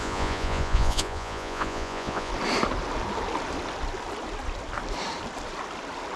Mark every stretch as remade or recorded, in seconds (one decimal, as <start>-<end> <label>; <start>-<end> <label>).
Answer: 0.0-2.3 remade; 2.3-6.2 recorded